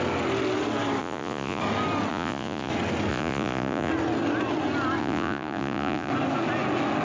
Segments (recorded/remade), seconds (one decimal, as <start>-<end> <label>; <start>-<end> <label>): 0.0-1.0 recorded; 1.0-1.6 remade; 1.6-2.1 recorded; 2.1-2.7 remade; 2.7-3.1 recorded; 3.1-3.9 remade; 3.9-5.0 recorded; 5.0-6.1 remade; 6.1-7.0 recorded